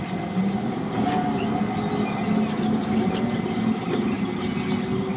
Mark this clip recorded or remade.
recorded